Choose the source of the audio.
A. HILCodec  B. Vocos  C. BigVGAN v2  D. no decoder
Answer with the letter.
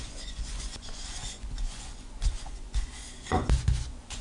B